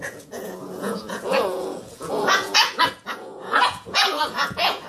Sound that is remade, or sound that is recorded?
remade